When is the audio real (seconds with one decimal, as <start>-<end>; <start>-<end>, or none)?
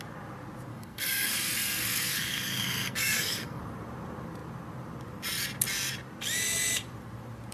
0.0-0.7; 3.6-7.5